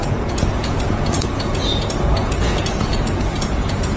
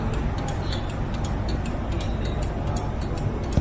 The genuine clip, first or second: second